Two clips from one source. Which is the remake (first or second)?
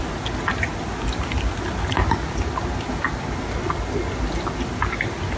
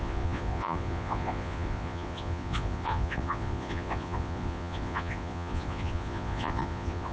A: second